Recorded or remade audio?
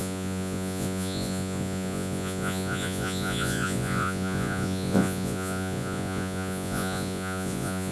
remade